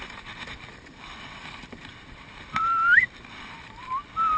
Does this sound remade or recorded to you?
remade